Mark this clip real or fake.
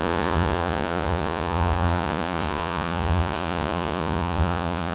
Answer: fake